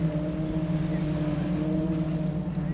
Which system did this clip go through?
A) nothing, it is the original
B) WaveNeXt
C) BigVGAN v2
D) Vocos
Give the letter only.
A